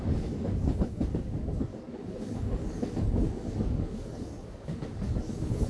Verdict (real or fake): fake